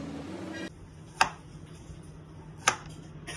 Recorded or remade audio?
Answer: recorded